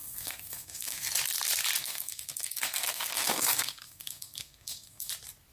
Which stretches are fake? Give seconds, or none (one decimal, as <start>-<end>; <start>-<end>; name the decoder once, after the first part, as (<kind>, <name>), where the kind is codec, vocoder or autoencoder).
0.0-1.1 (codec, SNAC); 1.8-5.1